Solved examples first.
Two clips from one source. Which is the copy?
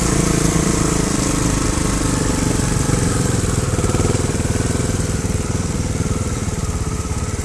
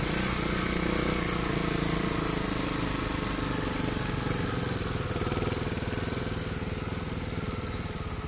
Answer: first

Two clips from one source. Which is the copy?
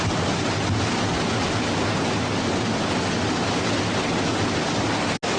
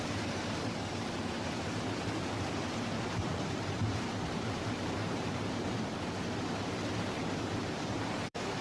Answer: second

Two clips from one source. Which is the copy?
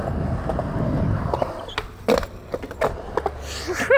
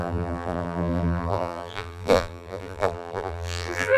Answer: second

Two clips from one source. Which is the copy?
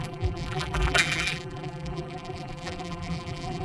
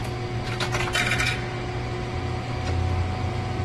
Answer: first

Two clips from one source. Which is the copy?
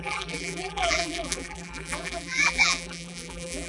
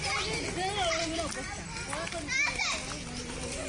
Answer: first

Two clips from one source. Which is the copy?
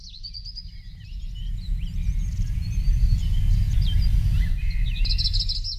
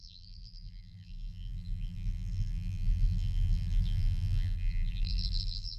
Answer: second